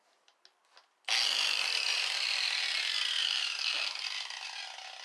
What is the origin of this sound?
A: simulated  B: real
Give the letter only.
B